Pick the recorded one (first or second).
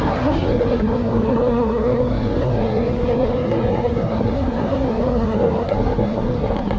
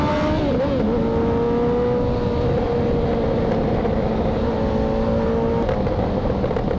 second